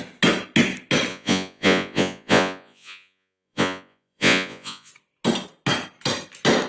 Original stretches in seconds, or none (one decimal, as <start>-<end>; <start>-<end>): 0.0-1.1; 4.9-6.7